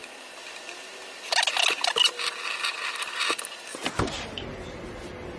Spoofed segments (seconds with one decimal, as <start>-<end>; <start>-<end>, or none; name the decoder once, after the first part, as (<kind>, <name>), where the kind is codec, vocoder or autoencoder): none